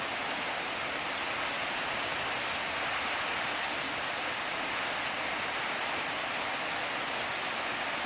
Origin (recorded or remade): recorded